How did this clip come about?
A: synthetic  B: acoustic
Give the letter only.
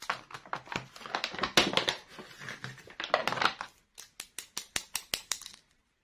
B